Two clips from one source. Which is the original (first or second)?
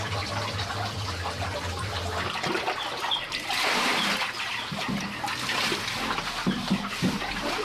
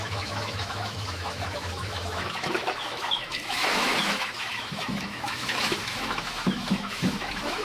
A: first